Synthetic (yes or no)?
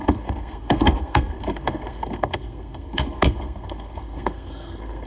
yes